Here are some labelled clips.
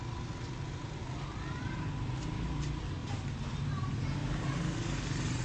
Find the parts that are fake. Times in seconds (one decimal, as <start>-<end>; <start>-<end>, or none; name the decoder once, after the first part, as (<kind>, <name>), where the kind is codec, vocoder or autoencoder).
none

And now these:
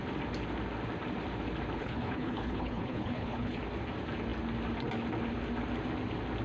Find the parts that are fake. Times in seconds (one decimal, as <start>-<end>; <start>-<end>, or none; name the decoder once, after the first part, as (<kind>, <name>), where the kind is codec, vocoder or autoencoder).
1.8-3.6 (codec, HILCodec)

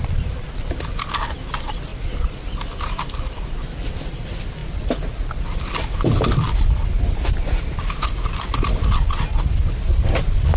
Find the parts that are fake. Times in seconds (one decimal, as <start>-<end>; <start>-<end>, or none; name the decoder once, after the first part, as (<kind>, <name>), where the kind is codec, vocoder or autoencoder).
none

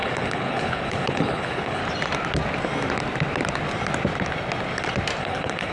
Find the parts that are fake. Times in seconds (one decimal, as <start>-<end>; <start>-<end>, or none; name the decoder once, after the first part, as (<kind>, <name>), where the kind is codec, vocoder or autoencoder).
0.0-1.8 (codec, HILCodec); 5.2-5.7

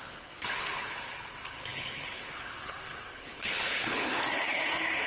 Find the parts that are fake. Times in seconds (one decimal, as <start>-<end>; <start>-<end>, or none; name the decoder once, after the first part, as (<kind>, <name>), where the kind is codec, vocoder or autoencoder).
0.0-5.1 (codec, HILCodec)

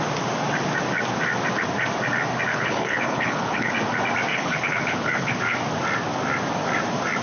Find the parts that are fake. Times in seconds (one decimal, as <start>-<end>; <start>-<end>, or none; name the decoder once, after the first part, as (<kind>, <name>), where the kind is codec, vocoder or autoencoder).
2.5-3.7 (codec, HILCodec); 4.3-5.4

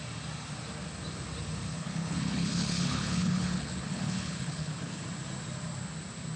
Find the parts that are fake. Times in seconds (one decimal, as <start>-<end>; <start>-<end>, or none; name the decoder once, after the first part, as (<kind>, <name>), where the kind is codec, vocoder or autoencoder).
1.7-5.0 (codec, HILCodec)